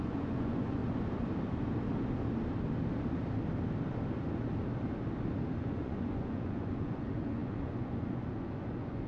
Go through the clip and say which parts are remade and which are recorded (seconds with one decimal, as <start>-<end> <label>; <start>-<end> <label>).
0.0-0.8 remade; 0.8-5.6 recorded; 5.6-9.1 remade